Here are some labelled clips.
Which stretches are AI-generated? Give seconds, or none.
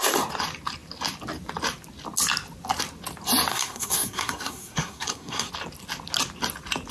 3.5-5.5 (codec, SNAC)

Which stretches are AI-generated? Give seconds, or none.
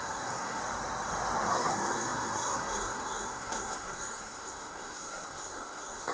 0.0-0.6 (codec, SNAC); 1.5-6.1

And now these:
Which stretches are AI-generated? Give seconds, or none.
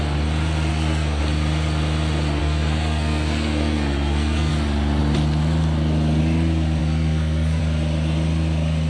0.7-1.2 (codec, SNAC); 2.4-4.5; 6.8-7.6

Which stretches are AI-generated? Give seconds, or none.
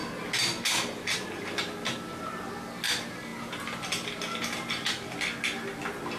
none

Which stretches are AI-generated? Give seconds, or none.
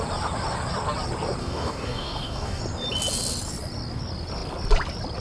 1.4-2.6 (codec, DAC)